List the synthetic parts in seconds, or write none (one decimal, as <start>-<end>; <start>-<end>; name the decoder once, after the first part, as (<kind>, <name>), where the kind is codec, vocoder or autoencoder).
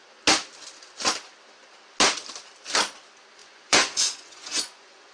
3.4-5.1 (vocoder, Vocos)